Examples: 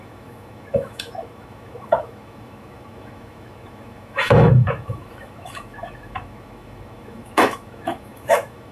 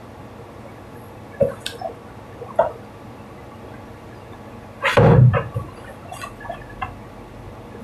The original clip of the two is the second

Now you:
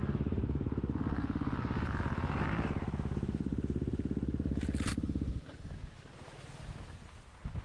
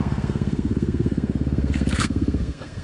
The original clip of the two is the first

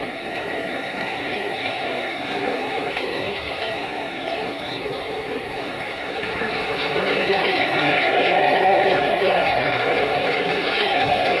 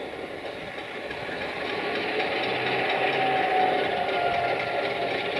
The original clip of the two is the second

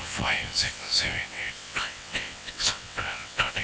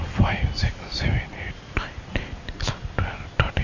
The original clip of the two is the second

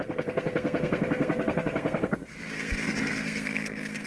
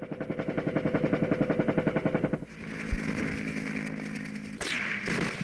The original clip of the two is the second